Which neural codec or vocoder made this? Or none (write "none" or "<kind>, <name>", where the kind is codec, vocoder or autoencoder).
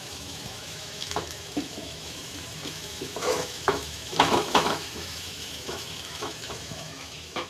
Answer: autoencoder, DAC-VAE